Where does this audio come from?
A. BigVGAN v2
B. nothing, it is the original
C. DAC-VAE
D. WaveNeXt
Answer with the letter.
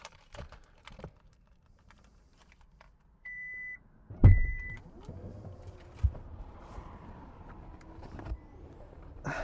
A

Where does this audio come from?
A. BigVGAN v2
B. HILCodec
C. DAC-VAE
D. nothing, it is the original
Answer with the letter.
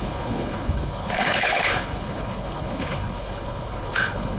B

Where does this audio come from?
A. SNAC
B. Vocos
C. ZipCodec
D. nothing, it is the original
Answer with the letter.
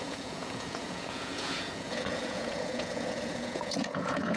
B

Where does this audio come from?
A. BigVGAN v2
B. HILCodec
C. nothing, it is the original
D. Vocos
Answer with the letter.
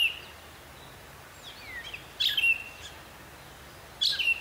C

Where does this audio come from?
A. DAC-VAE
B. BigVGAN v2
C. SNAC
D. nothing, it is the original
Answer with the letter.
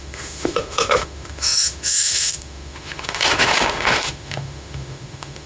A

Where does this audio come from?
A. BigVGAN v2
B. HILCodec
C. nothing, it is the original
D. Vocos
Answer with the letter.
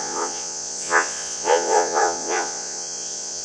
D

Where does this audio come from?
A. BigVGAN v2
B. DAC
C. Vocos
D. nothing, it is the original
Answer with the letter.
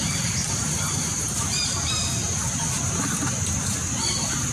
D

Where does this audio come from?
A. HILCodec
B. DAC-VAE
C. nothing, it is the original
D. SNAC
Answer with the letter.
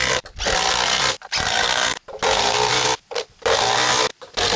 C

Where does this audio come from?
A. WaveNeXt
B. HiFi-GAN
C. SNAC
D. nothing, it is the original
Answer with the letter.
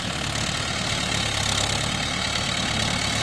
D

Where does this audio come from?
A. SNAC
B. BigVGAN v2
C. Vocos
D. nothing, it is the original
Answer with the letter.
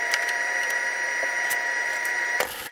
B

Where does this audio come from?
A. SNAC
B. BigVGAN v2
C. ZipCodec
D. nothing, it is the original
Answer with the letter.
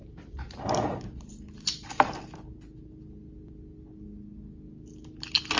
D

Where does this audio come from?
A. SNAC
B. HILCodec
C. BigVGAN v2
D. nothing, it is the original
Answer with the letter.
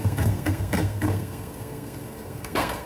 A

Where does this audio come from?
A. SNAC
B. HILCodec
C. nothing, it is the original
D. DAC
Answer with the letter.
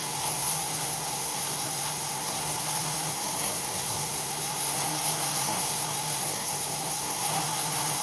A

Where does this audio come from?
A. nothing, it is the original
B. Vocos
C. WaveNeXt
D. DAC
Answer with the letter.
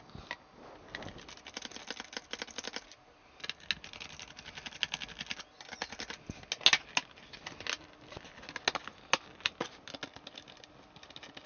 A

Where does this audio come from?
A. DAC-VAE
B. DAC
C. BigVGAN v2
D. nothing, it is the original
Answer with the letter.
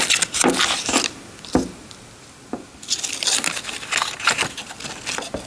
D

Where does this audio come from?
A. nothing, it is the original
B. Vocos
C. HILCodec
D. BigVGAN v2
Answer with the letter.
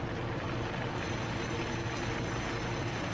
A